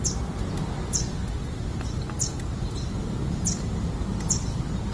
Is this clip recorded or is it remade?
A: recorded